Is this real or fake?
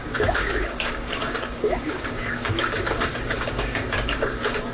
fake